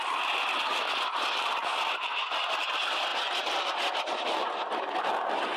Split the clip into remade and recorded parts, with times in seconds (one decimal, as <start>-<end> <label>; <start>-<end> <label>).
0.0-5.6 recorded